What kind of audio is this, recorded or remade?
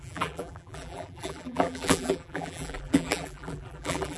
remade